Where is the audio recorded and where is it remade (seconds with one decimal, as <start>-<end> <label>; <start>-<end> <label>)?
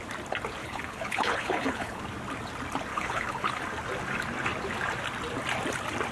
0.0-0.6 recorded; 0.6-2.0 remade; 2.0-2.9 recorded; 2.9-3.5 remade; 3.5-6.1 recorded